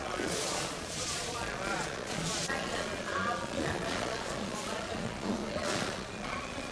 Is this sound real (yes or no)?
no